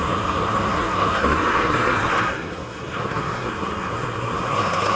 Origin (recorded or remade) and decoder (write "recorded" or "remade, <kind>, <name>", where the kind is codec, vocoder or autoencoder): remade, codec, SNAC